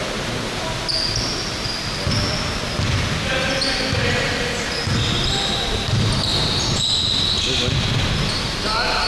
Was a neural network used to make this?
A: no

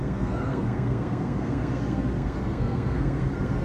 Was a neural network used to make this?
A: yes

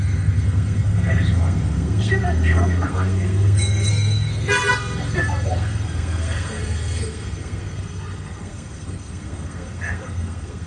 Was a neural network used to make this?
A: yes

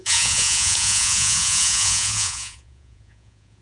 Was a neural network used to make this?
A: yes